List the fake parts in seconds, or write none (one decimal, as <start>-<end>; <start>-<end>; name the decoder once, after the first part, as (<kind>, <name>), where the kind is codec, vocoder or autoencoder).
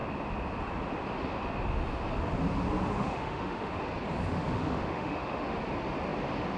2.9-3.8 (autoencoder, DAC-VAE); 4.3-5.6